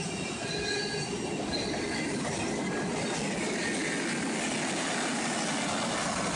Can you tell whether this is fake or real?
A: real